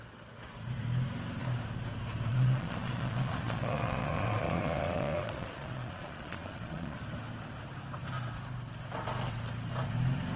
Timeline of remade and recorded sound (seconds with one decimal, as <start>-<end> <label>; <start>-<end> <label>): 0.0-2.3 recorded; 2.3-7.0 remade; 7.0-10.4 recorded